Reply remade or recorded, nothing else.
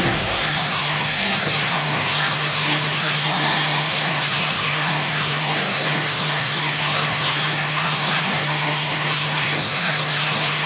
remade